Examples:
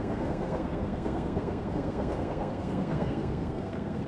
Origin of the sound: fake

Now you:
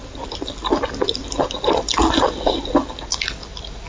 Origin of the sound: real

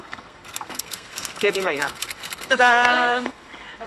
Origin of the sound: fake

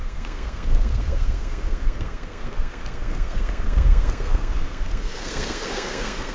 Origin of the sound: fake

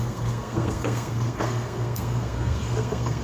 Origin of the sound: fake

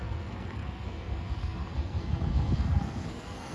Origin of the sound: fake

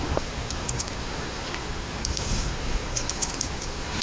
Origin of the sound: fake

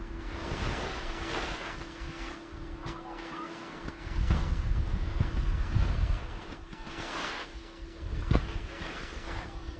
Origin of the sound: fake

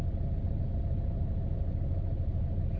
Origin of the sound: real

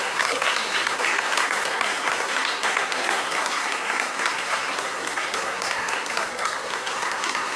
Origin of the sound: fake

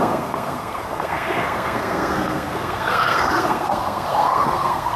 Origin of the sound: fake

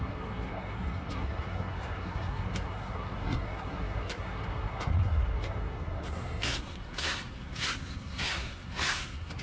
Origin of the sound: fake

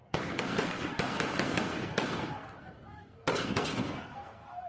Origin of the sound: fake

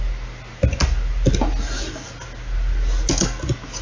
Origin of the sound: real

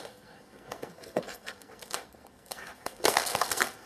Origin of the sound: fake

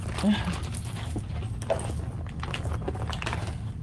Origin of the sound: real